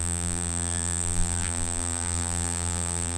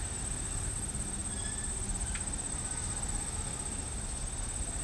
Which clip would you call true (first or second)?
second